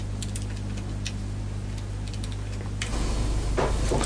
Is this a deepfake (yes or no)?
no